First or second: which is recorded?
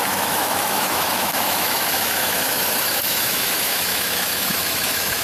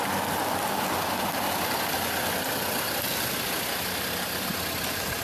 second